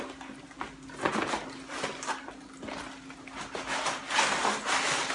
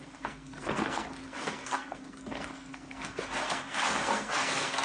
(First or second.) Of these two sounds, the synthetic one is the second